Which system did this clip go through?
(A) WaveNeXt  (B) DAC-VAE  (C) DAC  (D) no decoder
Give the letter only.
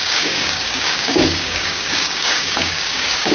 C